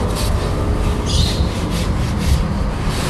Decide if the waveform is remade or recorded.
recorded